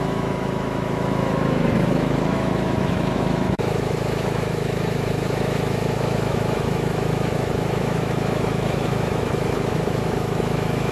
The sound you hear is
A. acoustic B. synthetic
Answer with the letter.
B